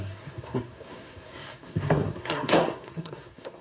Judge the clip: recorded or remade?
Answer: remade